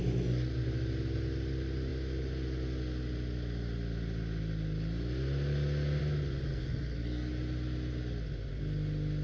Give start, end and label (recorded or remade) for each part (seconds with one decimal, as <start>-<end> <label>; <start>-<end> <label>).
0.0-6.5 recorded; 6.5-7.3 remade; 7.3-9.2 recorded